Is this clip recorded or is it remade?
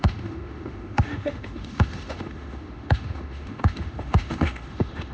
remade